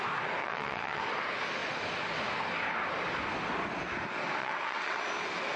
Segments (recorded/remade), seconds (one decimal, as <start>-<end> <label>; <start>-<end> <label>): 0.0-0.4 recorded; 0.4-1.0 remade; 1.0-4.4 recorded; 4.4-5.0 remade; 5.0-5.6 recorded